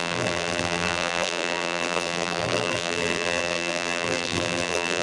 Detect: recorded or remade remade